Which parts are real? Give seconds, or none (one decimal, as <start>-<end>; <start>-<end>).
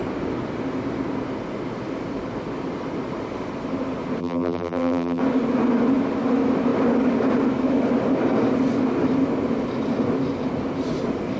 0.0-4.2; 5.2-11.4